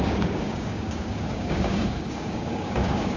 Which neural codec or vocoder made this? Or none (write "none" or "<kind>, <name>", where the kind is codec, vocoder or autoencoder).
codec, DAC